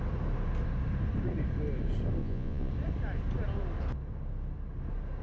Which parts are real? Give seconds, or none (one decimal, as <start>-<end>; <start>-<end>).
0.0-2.2; 2.7-5.2